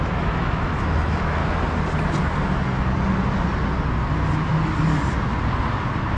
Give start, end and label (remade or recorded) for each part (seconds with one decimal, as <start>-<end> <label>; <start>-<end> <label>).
0.0-1.4 remade; 1.4-4.1 recorded; 4.1-4.5 remade; 4.5-6.2 recorded